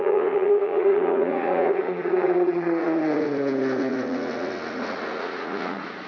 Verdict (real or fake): fake